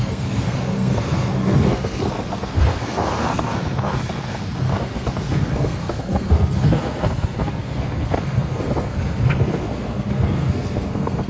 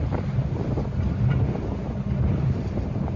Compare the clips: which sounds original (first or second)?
second